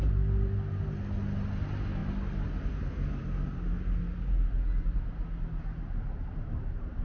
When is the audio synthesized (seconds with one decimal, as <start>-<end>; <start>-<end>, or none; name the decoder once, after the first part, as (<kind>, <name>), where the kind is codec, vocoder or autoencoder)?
none